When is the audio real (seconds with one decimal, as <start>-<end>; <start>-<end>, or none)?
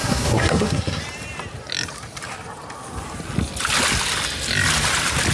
1.0-5.3